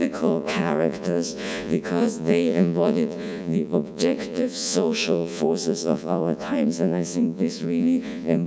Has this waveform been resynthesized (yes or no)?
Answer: yes